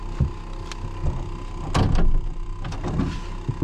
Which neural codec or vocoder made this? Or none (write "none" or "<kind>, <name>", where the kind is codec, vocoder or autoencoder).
none